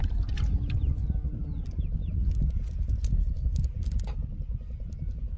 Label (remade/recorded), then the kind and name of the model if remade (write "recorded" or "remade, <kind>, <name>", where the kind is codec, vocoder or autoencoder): recorded